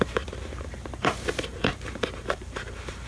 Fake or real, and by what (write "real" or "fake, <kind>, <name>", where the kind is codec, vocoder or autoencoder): fake, vocoder, BigVGAN v2